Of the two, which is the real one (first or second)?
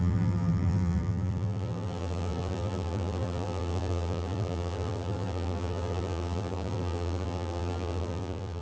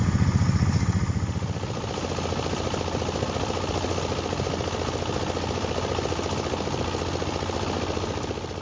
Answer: second